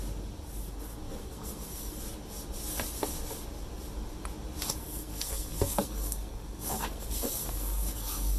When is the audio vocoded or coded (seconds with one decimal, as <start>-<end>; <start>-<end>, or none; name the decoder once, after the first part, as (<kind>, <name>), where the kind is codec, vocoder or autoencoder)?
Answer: 1.2-2.0 (codec, SNAC); 4.8-8.4